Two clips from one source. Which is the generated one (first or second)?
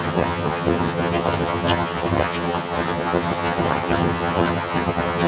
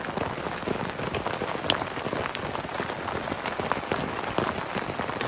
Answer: first